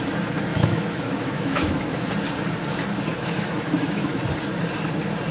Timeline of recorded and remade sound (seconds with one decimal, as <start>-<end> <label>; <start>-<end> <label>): 0.0-0.5 recorded; 0.5-2.1 remade; 2.1-3.1 recorded; 3.1-4.2 remade; 4.2-5.3 recorded